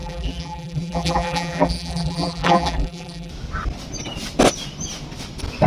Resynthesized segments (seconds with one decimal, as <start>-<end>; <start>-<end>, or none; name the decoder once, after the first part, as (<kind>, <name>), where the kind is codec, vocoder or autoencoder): 0.0-3.3 (vocoder, BigVGAN v2)